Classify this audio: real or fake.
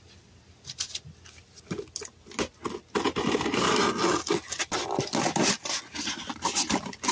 real